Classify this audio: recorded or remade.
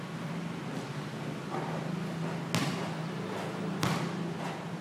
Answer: recorded